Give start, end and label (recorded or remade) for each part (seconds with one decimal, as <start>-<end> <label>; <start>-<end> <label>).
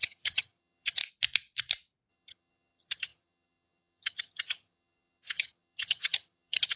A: 0.0-1.0 remade; 1.0-2.1 recorded; 2.1-6.8 remade